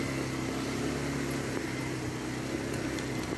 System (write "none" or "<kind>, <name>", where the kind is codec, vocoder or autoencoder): none